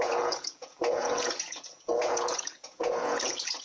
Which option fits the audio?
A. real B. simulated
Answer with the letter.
B